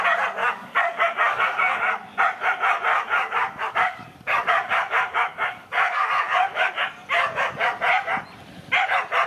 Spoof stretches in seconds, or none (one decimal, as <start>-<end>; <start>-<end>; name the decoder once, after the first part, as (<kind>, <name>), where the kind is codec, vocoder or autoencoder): 0.4-1.9 (codec, DAC); 2.9-6.7